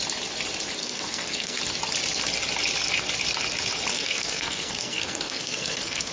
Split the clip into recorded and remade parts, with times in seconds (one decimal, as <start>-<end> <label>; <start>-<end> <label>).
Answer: 0.0-0.8 recorded; 0.8-1.6 remade; 1.6-3.9 recorded; 3.9-6.1 remade